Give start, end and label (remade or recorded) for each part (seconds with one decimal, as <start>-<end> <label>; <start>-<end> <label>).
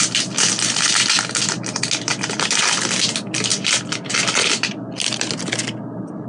0.0-6.3 recorded